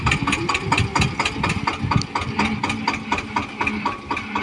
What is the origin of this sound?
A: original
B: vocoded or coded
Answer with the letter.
A